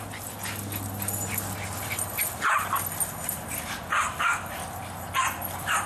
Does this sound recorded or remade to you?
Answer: recorded